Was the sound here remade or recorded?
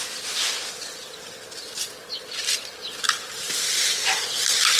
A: recorded